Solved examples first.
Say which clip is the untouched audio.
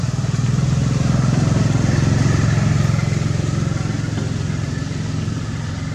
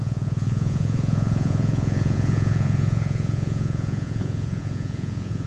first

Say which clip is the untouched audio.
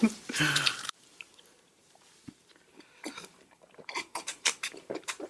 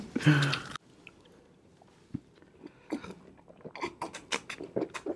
second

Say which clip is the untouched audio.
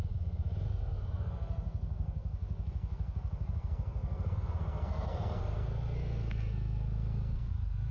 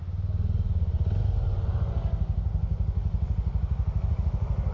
second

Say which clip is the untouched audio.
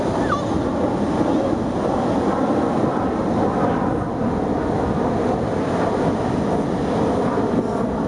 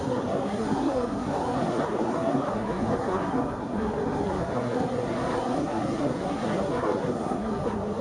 first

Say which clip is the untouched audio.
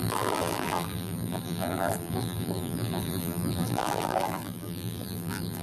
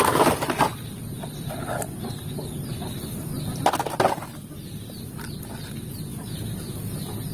second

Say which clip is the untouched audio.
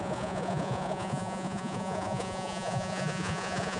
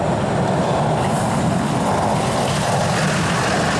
second